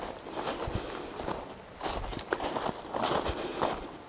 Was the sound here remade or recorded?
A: recorded